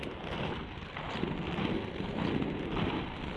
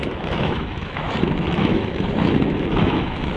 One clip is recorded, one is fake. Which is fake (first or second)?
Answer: second